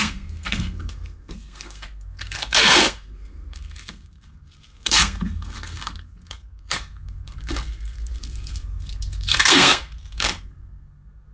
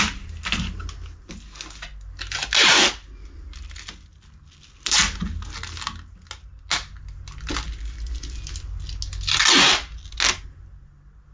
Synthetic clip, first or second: first